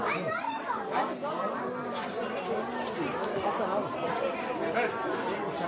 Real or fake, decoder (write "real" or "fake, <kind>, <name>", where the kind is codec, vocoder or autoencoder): real